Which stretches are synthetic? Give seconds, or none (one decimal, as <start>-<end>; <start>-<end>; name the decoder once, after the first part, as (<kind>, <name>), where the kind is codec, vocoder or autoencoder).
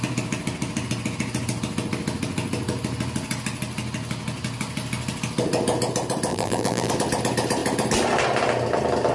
6.3-6.9 (vocoder, BigVGAN v2)